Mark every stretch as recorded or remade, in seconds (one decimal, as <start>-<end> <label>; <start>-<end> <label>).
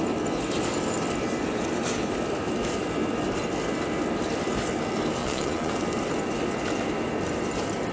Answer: 0.0-5.2 recorded; 5.2-5.7 remade; 5.7-7.9 recorded